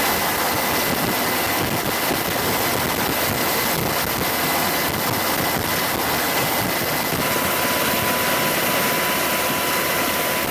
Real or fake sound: real